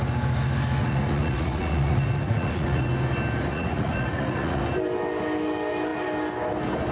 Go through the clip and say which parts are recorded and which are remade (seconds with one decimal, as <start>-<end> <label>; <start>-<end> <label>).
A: 0.0-0.8 recorded; 0.8-2.9 remade; 2.9-3.5 recorded; 3.5-4.6 remade; 4.6-6.9 recorded